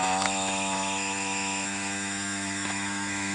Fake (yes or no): yes